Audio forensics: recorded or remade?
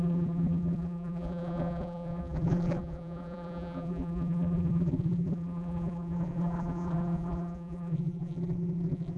remade